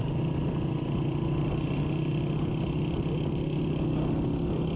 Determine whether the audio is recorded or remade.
recorded